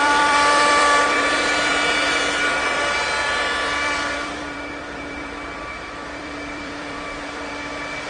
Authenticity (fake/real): fake